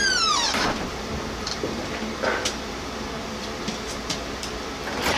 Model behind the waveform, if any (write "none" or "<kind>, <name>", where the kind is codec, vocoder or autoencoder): vocoder, BigVGAN v2